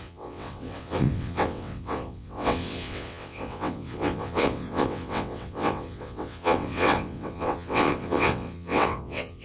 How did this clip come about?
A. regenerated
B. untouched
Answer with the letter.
A